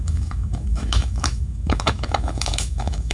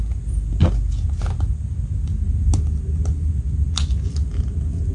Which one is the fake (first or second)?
first